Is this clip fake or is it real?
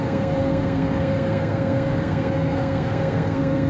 fake